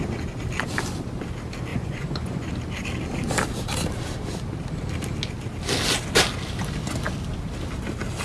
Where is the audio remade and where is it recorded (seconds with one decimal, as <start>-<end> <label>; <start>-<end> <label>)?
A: 0.0-1.7 recorded; 1.7-2.5 remade; 2.5-8.2 recorded